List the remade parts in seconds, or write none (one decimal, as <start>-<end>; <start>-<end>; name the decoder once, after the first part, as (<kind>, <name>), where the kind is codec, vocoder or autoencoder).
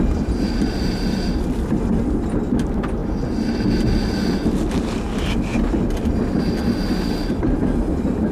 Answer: 0.0-3.0 (vocoder, BigVGAN v2); 4.8-5.5; 7.3-8.3